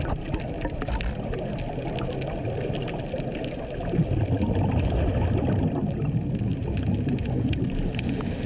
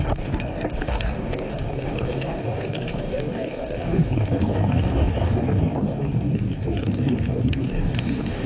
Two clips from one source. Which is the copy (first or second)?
second